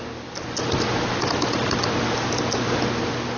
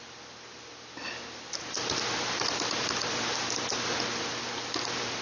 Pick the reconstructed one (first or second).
second